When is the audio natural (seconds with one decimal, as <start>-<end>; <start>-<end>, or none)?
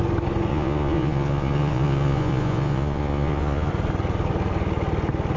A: 0.0-0.5; 3.7-5.4